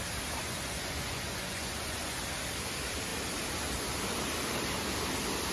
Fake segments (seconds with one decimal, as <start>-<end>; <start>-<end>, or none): 0.4-2.2